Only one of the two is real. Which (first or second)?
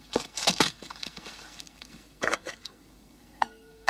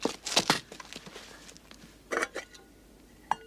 second